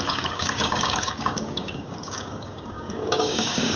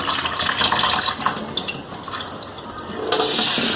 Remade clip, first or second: first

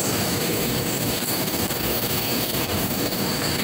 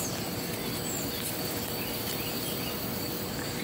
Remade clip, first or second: first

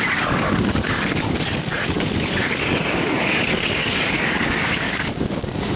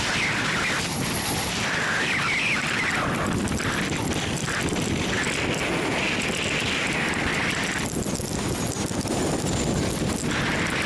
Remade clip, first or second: first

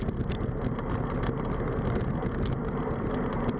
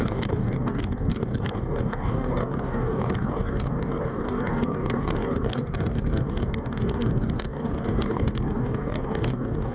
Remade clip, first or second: second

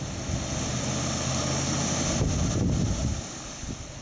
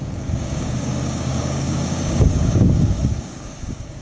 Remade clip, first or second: second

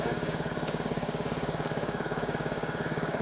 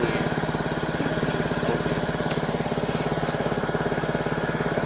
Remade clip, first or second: first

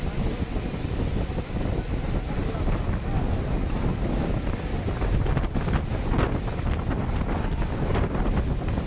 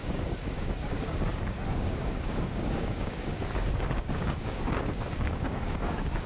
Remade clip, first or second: second